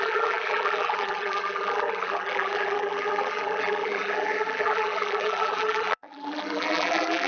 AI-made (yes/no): yes